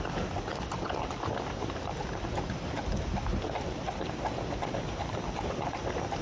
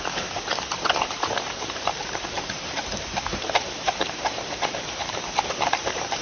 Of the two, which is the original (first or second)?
first